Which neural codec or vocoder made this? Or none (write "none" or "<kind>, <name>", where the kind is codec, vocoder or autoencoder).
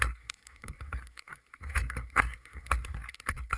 codec, SNAC